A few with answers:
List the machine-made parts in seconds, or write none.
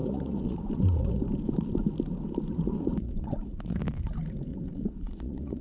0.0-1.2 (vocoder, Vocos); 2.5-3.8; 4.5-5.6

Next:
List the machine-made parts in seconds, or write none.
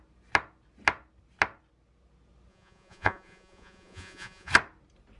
2.5-4.5 (vocoder, Vocos)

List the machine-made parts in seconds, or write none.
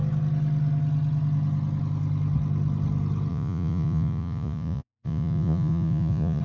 3.3-6.4 (vocoder, Vocos)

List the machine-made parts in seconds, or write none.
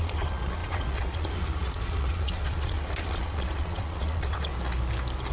0.0-4.5 (vocoder, Vocos)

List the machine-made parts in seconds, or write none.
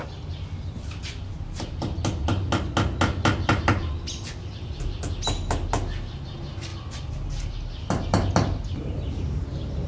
none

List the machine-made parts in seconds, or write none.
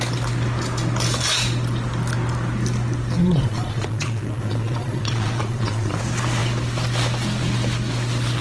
3.2-6.0 (vocoder, Vocos)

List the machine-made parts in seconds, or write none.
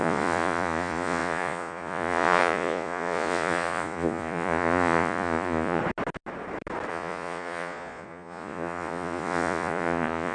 0.0-5.8 (vocoder, Vocos); 6.9-10.3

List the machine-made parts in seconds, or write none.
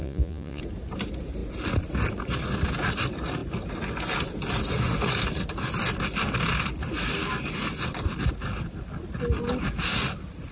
0.0-0.6 (vocoder, Vocos)